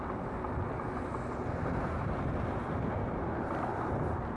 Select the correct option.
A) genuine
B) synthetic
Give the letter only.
A